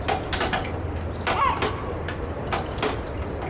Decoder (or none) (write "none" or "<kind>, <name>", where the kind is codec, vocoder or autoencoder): none